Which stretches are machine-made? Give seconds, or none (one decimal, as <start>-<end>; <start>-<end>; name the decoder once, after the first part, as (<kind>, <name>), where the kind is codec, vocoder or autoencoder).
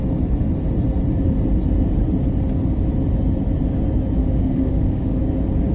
4.2-5.2 (autoencoder, DAC-VAE)